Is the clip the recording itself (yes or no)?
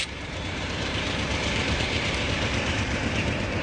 no